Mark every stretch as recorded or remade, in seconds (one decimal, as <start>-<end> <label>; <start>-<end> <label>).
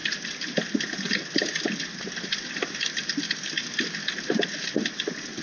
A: 0.0-5.4 recorded